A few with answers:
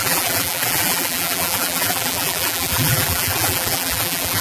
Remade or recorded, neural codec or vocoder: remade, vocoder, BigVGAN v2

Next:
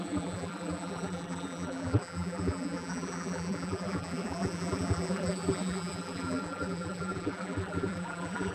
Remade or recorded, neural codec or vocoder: remade, vocoder, BigVGAN v2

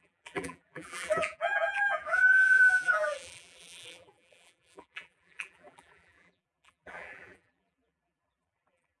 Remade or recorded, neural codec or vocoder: remade, vocoder, BigVGAN v2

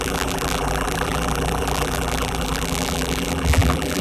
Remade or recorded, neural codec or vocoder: remade, vocoder, BigVGAN v2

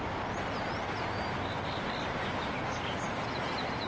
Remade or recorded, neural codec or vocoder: recorded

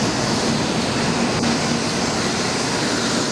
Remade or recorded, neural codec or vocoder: recorded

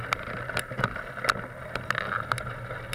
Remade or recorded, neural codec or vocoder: recorded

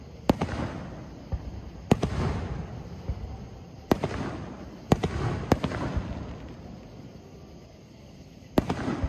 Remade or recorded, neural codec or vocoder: recorded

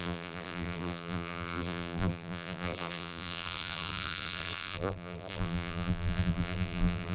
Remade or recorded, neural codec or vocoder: remade, vocoder, BigVGAN v2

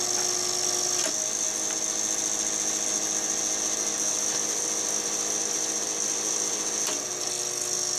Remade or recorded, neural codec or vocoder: recorded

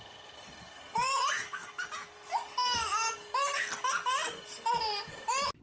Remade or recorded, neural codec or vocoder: recorded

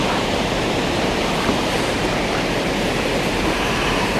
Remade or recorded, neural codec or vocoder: remade, vocoder, BigVGAN v2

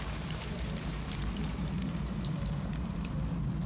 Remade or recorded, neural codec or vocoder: remade, vocoder, BigVGAN v2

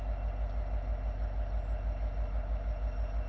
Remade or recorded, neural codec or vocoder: recorded